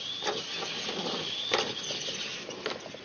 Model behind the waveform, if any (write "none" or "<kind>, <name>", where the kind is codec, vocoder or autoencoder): vocoder, BigVGAN v2